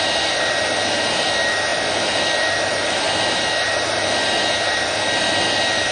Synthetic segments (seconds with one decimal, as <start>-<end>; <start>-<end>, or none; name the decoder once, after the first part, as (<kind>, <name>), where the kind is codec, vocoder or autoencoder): none